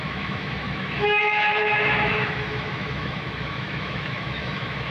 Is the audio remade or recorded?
remade